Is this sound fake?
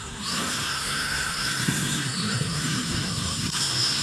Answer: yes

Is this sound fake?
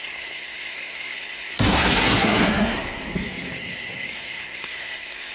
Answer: yes